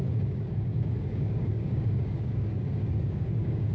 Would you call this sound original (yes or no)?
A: no